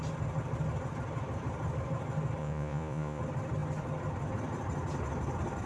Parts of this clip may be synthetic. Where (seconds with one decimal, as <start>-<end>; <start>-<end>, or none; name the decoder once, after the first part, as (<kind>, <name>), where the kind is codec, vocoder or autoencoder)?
2.4-3.2 (vocoder, Vocos)

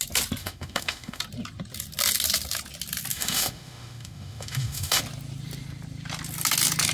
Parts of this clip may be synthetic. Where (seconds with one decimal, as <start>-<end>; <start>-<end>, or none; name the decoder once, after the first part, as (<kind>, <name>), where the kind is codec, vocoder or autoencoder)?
0.4-1.2 (autoencoder, DAC-VAE); 3.1-5.0

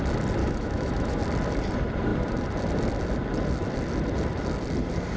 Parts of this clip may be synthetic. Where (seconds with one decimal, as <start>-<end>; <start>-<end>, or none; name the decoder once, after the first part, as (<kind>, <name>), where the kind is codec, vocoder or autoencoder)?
0.4-1.2 (autoencoder, DAC-VAE)

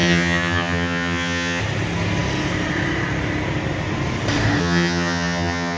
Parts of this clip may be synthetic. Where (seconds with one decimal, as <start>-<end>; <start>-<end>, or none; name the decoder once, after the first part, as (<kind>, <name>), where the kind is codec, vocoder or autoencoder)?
0.0-1.6 (vocoder, HiFi-GAN); 4.6-5.8

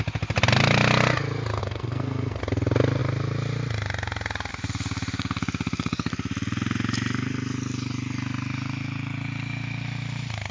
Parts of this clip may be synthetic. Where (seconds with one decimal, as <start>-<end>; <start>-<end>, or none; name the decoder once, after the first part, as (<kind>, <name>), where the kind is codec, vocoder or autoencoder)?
1.6-2.4 (codec, SNAC)

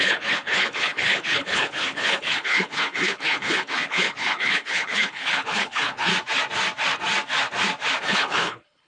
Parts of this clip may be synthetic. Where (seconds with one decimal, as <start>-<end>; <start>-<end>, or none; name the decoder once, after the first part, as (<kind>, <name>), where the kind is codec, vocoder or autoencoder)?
0.0-6.1 (codec, HILCodec); 8.0-8.9

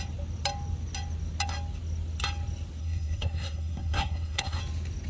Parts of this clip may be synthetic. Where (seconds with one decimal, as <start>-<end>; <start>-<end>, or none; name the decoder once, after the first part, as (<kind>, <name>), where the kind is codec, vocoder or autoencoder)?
2.8-4.6 (codec, SNAC)